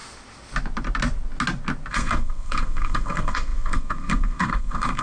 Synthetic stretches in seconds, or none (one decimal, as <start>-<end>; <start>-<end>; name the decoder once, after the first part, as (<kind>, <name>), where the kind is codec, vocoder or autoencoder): 1.9-5.0 (codec, SNAC)